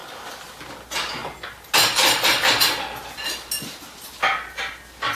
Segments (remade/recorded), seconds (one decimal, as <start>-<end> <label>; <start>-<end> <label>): 0.0-5.1 recorded